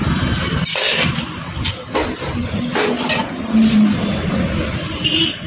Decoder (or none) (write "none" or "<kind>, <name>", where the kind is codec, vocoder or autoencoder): none